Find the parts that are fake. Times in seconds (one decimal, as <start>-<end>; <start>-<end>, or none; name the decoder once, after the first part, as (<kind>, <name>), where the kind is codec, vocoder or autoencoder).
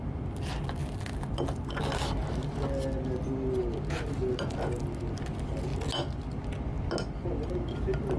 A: none